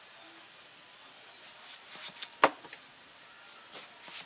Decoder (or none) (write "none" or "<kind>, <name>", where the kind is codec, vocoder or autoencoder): none